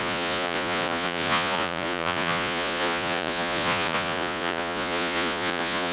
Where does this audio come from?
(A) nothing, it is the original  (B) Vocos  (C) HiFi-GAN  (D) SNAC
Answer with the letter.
B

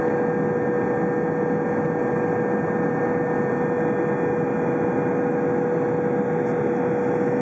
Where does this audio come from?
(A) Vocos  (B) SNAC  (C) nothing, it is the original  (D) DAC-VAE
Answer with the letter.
C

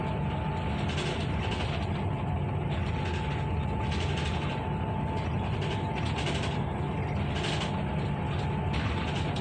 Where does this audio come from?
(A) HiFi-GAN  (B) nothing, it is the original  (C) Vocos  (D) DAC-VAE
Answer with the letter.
B